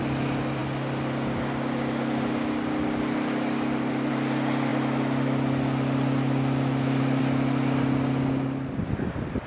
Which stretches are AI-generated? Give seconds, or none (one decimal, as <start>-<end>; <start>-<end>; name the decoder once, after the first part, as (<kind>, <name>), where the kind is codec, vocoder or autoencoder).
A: none